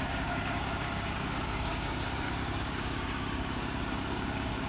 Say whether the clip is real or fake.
fake